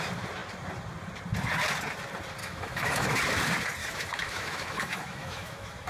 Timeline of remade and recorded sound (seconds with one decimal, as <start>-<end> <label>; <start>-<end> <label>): 0.0-2.4 recorded; 2.4-3.2 remade; 3.2-3.8 recorded; 3.8-5.9 remade